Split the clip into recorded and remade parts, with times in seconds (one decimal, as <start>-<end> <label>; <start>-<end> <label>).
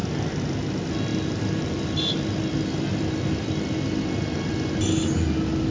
0.0-1.1 recorded; 1.1-4.5 remade; 4.5-5.7 recorded